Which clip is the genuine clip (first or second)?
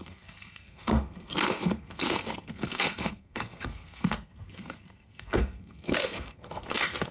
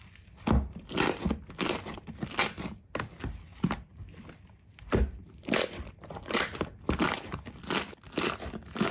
second